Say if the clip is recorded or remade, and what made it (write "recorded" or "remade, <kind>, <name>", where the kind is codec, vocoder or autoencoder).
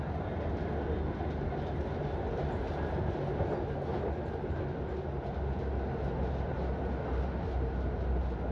recorded